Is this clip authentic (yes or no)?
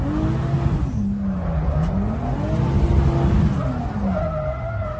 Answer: yes